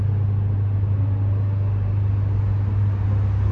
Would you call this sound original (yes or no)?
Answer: yes